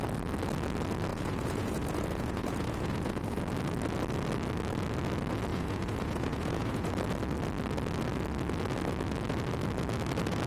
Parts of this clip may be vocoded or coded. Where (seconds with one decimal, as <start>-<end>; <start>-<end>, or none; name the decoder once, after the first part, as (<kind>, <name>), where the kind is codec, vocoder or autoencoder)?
1.1-3.4 (vocoder, Vocos); 5.5-6.9